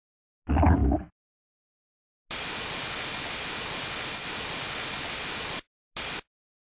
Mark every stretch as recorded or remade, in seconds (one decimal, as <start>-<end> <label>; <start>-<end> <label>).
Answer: 0.0-6.7 recorded